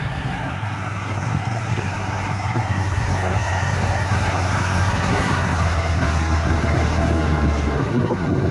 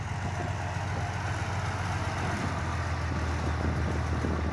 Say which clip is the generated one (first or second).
first